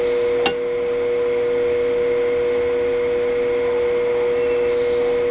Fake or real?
real